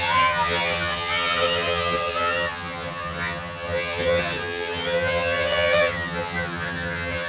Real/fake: fake